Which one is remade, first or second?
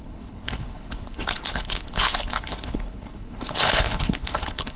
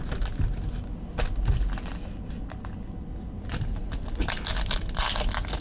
first